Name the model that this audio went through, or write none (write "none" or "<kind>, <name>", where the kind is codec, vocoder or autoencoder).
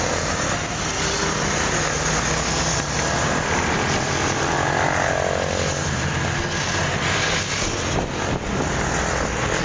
none